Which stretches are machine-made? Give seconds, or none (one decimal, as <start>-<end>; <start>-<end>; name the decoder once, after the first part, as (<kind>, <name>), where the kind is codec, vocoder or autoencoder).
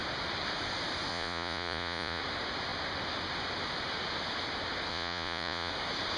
1.1-2.2 (vocoder, Vocos); 4.9-5.7